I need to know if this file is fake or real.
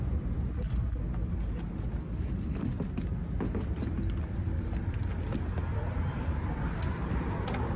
real